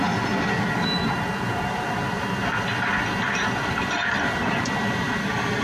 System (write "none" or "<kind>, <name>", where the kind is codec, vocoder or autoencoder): none